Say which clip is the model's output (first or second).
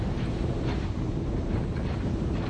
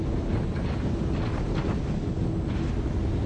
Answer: first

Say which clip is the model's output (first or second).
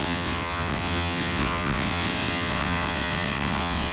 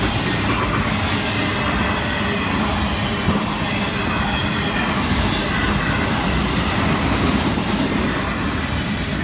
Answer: first